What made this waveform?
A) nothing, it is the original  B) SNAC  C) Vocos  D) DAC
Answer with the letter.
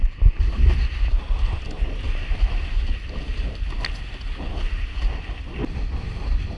A